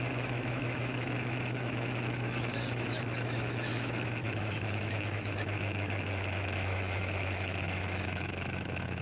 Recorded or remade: remade